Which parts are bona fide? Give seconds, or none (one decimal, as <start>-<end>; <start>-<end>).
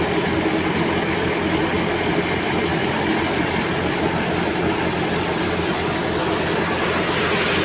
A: 0.0-7.6